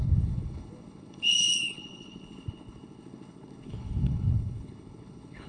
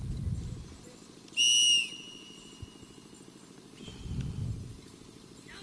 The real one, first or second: second